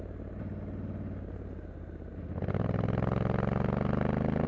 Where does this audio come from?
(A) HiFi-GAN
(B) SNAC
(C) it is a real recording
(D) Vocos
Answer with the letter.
C